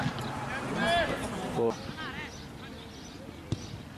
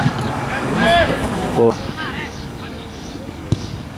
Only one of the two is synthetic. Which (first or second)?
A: second